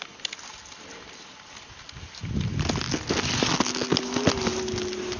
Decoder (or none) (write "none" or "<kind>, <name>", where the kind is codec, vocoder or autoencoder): none